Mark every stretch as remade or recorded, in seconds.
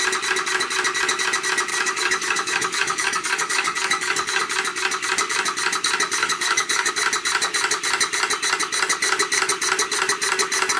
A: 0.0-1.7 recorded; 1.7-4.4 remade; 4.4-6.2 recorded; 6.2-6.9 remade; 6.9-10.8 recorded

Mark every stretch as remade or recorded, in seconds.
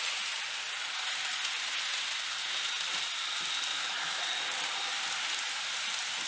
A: 0.0-3.7 recorded; 3.7-4.2 remade; 4.2-6.3 recorded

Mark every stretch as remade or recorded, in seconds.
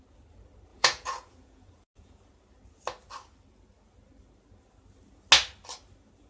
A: 0.0-0.7 recorded; 0.7-2.3 remade; 2.3-6.3 recorded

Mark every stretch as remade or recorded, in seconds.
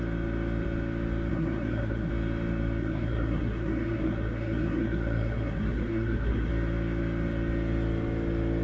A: 0.0-1.3 recorded; 1.3-2.1 remade; 2.1-2.8 recorded; 2.8-6.5 remade; 6.5-8.6 recorded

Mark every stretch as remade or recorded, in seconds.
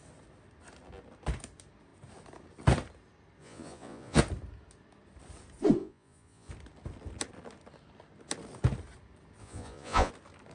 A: 0.0-3.4 recorded; 3.4-4.2 remade; 4.2-5.8 recorded; 5.8-6.5 remade; 6.5-9.4 recorded; 9.4-10.1 remade; 10.1-10.5 recorded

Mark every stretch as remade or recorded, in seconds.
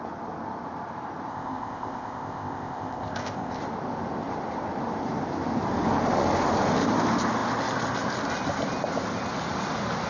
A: 0.0-1.3 recorded; 1.3-3.6 remade; 3.6-10.1 recorded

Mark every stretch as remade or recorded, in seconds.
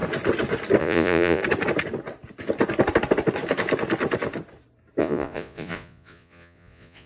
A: 0.0-0.8 recorded; 0.8-1.4 remade; 1.4-5.0 recorded; 5.0-7.1 remade